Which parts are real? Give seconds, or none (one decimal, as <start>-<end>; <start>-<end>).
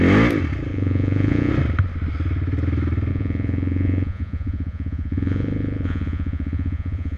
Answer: 0.0-0.7; 1.5-3.1